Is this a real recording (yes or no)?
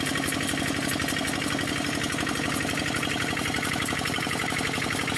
yes